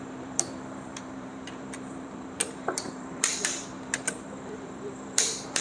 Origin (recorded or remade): remade